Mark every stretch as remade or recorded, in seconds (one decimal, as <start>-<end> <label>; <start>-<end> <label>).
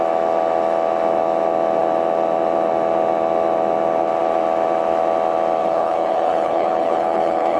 0.0-5.6 recorded; 5.6-7.6 remade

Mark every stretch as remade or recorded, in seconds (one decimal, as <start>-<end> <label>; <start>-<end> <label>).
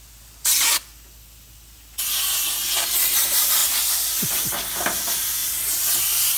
0.0-6.4 recorded